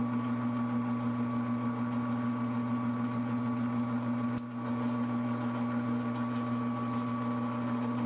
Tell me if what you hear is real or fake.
real